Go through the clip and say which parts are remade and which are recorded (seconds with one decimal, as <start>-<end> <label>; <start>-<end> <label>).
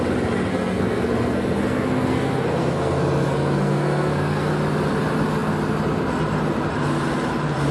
0.0-0.5 recorded; 0.5-4.5 remade; 4.5-7.7 recorded